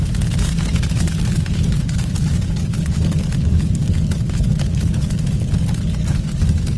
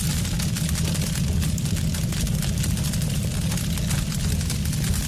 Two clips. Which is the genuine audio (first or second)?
second